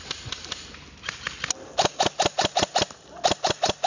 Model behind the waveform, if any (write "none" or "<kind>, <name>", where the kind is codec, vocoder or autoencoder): none